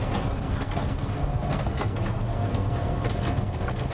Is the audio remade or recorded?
remade